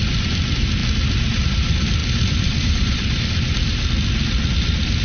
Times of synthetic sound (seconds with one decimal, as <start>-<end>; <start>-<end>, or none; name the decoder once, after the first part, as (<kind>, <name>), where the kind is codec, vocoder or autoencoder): 2.0-3.2 (vocoder, BigVGAN v2)